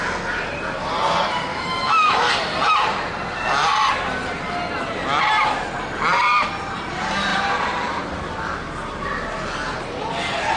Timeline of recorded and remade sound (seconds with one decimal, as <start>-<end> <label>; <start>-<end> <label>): 0.0-1.5 recorded; 1.5-2.3 remade; 2.3-10.6 recorded